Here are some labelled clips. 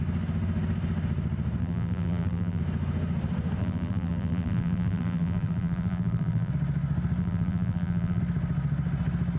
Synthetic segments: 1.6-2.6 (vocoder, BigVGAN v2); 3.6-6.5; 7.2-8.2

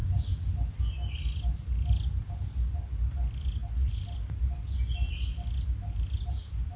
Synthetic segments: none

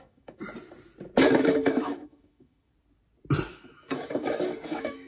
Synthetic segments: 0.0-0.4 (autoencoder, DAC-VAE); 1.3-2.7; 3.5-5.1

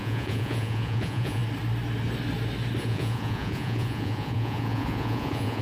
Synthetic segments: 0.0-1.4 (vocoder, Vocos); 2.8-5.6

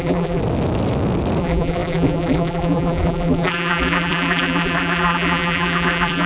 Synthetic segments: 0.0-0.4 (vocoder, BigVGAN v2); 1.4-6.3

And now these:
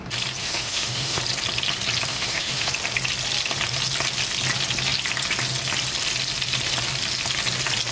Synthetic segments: 0.4-1.2 (autoencoder, DAC-VAE); 2.1-2.7